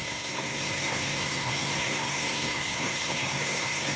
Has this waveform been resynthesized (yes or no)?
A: yes